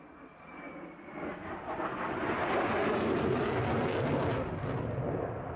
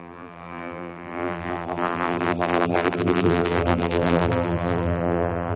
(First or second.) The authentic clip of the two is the first